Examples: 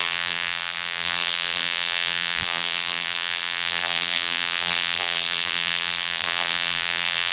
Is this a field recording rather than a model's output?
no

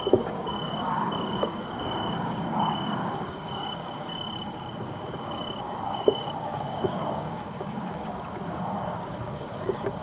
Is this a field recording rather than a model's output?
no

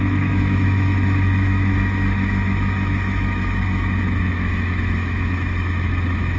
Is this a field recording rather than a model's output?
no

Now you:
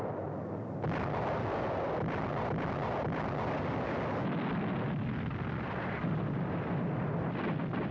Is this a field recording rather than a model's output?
yes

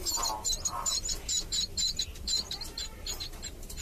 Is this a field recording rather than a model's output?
no